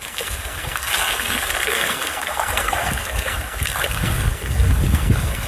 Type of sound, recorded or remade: remade